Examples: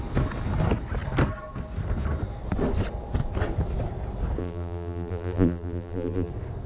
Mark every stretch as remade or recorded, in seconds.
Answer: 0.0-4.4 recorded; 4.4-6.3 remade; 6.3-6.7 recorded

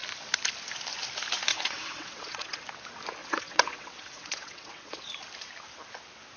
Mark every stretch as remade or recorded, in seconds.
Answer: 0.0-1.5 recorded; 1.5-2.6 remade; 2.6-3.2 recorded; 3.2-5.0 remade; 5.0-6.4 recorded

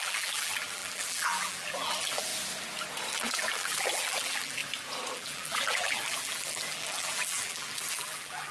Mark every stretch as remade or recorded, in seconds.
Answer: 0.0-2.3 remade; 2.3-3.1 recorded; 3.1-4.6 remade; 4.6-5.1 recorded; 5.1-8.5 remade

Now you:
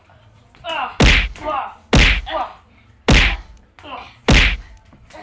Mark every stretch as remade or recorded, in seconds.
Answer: 0.0-5.2 recorded